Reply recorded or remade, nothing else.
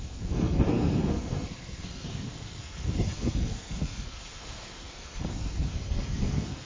remade